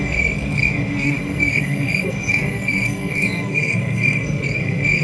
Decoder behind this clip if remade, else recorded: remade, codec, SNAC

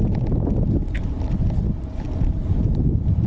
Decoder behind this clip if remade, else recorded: recorded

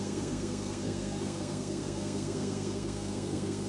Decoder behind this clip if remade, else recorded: remade, codec, SNAC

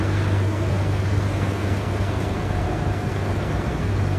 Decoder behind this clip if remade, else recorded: remade, codec, SNAC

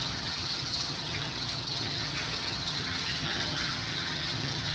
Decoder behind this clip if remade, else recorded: remade, vocoder, HiFi-GAN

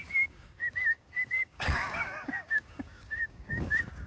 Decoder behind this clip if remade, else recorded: remade, codec, DAC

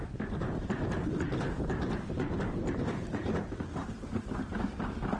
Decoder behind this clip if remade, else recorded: recorded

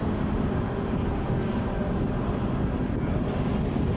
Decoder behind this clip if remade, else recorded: recorded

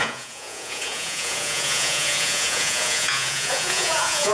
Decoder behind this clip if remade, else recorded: remade, vocoder, Vocos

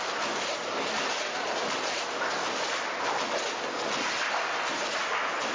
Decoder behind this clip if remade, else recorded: recorded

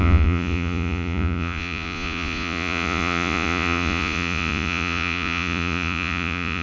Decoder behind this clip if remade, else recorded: remade, vocoder, Vocos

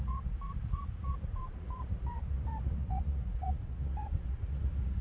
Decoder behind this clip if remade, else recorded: remade, vocoder, Vocos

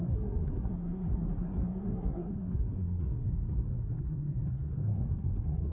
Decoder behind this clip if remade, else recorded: remade, codec, SNAC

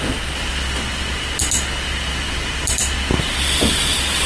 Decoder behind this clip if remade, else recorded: recorded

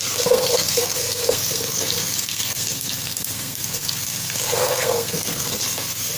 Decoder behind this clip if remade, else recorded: remade, codec, SNAC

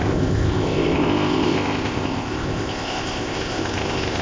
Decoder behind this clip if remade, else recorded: remade, codec, ZipCodec